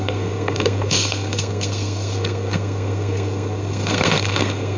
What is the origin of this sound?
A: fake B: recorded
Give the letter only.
A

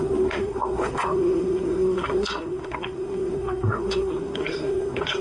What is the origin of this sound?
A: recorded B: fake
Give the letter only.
B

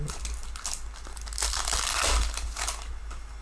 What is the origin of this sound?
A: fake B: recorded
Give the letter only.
B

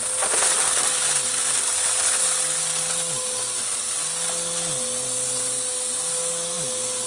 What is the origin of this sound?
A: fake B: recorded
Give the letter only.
B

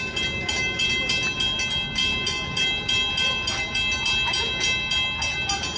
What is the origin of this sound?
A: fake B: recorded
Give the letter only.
B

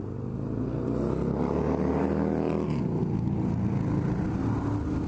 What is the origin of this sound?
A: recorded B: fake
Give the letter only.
A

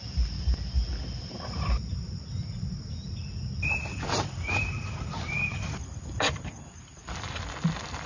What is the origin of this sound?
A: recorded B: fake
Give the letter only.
A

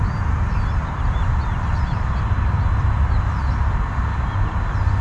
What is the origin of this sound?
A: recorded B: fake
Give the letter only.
A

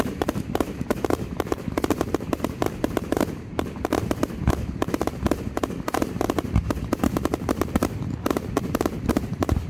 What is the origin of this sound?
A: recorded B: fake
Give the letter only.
B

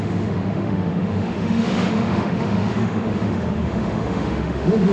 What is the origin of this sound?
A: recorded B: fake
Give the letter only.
B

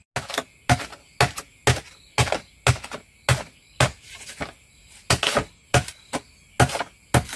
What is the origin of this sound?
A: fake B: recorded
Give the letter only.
B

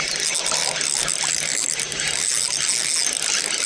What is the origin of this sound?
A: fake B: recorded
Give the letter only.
B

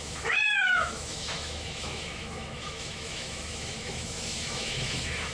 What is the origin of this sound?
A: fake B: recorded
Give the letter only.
A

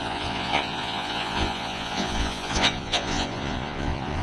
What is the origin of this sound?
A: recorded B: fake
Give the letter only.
B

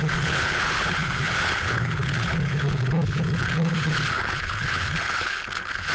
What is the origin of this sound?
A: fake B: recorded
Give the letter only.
A